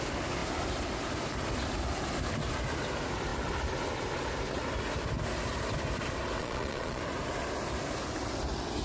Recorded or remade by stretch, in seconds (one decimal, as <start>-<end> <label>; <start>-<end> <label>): 0.0-6.4 recorded; 6.4-7.0 remade; 7.0-8.8 recorded